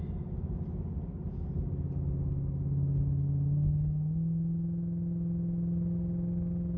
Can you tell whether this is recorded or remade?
recorded